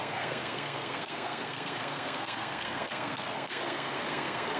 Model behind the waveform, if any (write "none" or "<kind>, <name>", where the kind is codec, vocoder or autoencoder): codec, SNAC